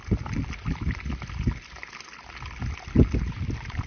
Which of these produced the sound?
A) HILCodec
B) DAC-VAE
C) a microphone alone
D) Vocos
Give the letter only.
C